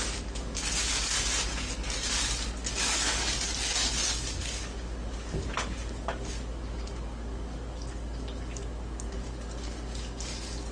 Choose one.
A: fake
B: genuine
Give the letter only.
A